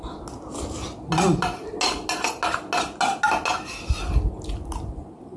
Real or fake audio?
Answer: real